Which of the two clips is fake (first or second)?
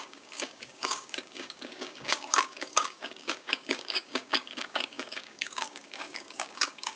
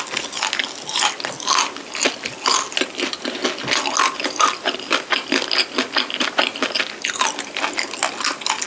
first